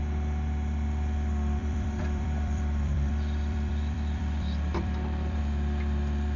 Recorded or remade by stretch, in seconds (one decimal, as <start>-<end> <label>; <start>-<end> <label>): 0.0-1.6 recorded; 1.6-5.4 remade; 5.4-6.4 recorded